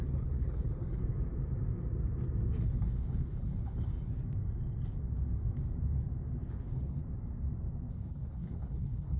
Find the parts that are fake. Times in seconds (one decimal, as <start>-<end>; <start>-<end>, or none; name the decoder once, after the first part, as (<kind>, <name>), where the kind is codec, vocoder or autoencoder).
0.0-1.0 (codec, HILCodec); 2.6-3.9; 6.5-7.0; 7.9-9.2